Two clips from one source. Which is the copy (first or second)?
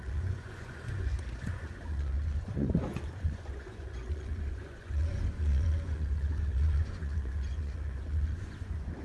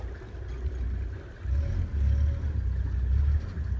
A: first